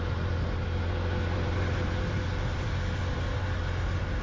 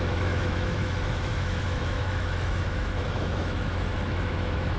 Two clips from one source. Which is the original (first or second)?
first